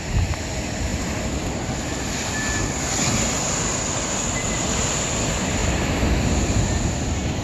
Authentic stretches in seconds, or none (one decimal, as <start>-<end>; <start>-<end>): 0.0-7.4